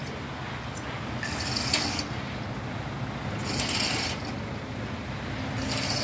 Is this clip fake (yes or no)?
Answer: no